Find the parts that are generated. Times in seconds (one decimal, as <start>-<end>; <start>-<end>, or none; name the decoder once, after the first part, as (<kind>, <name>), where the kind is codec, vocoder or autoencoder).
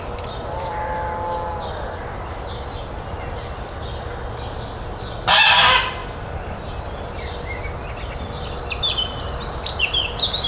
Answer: none